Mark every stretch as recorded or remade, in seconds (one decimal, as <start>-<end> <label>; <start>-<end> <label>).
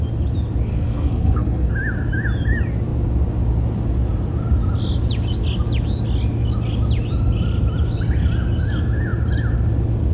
0.0-0.7 recorded; 0.7-1.7 remade; 1.7-10.1 recorded